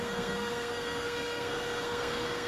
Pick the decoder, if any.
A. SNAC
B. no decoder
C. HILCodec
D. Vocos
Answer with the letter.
A